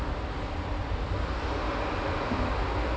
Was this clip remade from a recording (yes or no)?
no